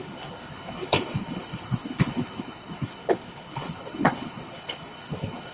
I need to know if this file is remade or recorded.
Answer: remade